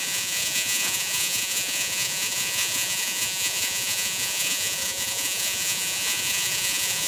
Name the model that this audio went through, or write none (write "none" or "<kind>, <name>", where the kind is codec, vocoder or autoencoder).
vocoder, Vocos